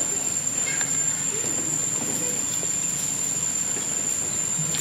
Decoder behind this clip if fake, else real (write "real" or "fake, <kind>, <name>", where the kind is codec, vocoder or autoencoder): real